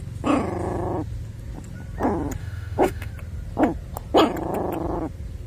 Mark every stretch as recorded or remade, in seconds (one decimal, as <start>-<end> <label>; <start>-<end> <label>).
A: 0.0-2.4 recorded; 2.4-3.1 remade; 3.1-5.5 recorded